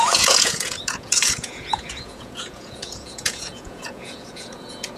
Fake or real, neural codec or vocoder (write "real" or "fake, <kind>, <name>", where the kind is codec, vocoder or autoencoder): fake, vocoder, Vocos